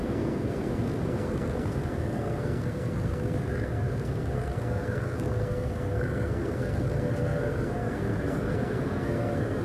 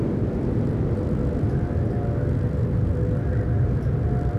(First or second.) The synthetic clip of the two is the first